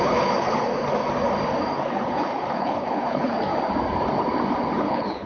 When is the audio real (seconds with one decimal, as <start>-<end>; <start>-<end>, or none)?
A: 0.7-1.8; 3.5-4.8